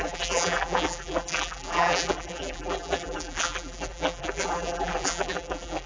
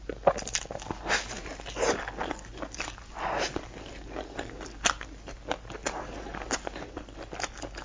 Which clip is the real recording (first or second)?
second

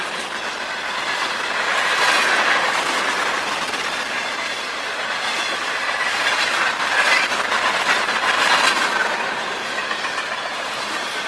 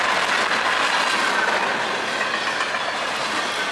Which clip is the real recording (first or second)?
second